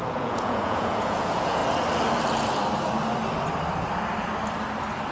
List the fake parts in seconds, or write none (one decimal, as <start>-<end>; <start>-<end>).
0.0-1.6